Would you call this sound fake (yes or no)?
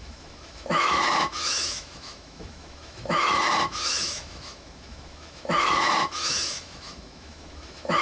yes